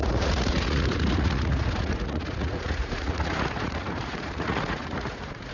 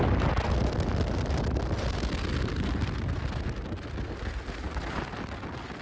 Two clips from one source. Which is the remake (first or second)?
first